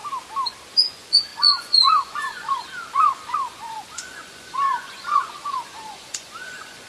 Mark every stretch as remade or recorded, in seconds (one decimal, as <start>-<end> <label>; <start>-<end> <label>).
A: 0.0-0.7 recorded; 0.7-6.9 remade